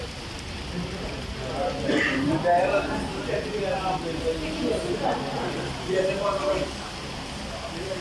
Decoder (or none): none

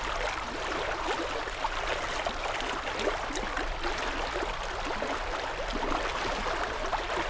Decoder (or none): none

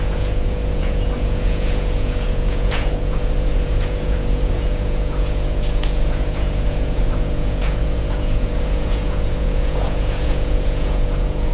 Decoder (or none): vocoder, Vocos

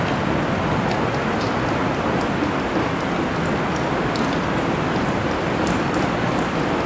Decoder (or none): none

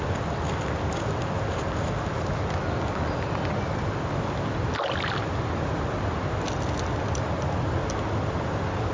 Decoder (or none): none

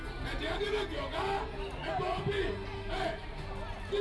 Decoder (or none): none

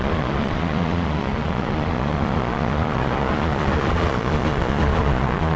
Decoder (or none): vocoder, Vocos